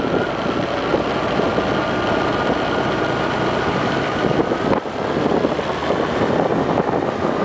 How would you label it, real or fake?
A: real